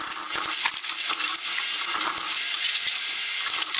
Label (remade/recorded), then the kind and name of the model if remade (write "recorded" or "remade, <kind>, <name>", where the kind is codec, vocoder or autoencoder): recorded